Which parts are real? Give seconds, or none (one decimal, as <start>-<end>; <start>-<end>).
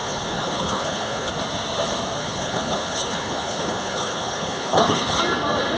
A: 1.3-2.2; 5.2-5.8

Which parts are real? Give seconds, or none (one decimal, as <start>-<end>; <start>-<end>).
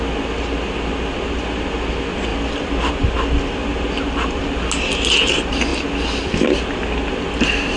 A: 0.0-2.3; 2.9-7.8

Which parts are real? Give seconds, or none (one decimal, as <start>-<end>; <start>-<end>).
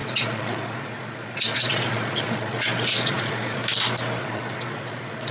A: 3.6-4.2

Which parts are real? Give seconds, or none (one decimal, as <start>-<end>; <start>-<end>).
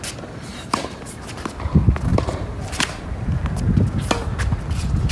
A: 0.0-0.5; 1.0-2.1; 3.4-5.1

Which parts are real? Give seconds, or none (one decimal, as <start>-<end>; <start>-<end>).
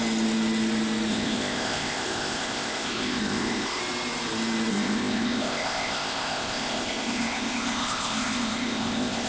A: 0.0-1.1; 3.8-4.7